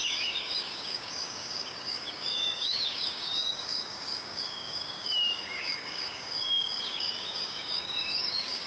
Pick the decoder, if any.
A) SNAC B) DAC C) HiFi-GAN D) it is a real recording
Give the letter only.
B